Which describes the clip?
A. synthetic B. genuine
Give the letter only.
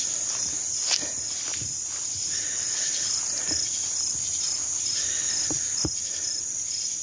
B